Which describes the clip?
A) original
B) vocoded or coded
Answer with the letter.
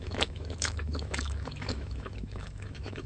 B